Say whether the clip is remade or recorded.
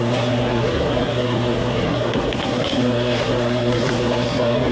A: remade